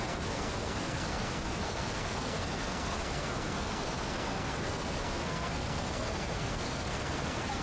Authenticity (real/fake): fake